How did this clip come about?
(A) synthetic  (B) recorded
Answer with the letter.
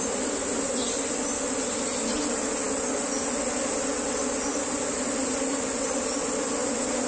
B